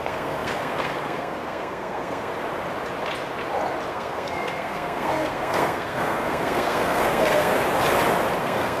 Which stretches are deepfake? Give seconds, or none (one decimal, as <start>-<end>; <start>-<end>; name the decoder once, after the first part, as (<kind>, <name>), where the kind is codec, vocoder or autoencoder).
0.0-2.3 (codec, SNAC); 3.9-7.5; 8.4-8.8